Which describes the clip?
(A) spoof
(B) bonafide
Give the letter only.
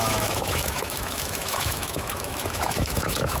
A